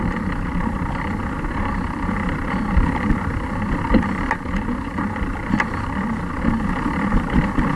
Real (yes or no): yes